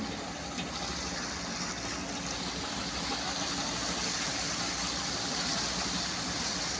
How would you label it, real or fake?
real